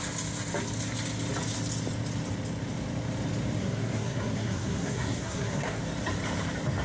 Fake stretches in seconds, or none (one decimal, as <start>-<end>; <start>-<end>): 3.6-5.8